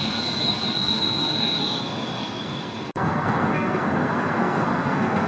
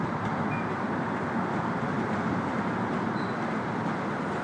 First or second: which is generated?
first